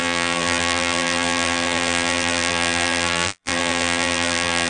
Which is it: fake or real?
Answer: fake